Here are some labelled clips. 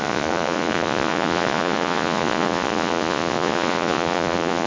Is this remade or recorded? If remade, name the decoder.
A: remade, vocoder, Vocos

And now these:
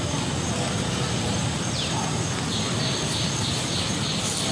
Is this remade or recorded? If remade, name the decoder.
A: recorded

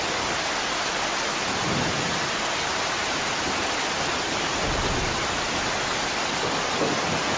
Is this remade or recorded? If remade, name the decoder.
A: recorded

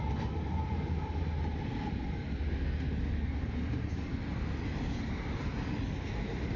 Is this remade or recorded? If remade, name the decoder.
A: recorded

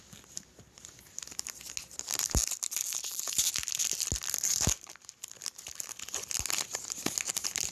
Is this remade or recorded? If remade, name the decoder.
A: recorded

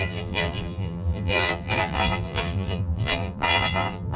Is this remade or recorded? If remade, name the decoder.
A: remade, vocoder, BigVGAN v2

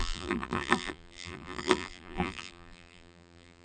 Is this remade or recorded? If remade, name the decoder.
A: remade, vocoder, BigVGAN v2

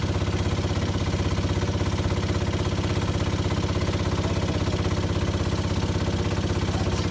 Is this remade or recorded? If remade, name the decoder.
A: recorded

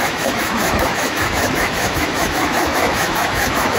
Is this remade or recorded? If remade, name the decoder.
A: remade, autoencoder, DAC-VAE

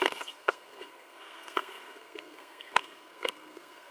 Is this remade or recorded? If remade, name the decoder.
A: remade, codec, SNAC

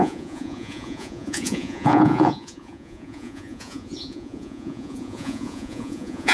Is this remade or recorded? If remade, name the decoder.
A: remade, vocoder, Vocos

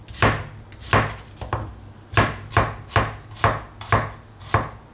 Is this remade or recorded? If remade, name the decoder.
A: recorded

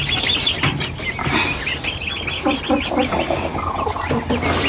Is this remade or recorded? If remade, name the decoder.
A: recorded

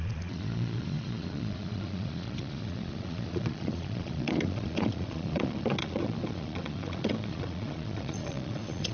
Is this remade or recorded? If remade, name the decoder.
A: remade, vocoder, Vocos